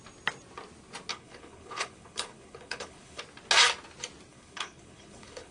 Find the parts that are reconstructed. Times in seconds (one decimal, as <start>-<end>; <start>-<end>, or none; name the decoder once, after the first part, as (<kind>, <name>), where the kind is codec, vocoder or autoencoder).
1.1-3.2 (codec, HILCodec); 4.3-5.5